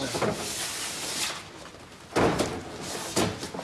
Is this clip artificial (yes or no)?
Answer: no